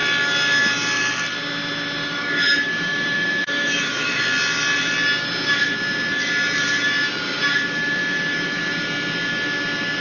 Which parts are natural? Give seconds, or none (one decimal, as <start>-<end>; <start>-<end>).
0.0-2.0; 4.2-8.0; 8.7-10.0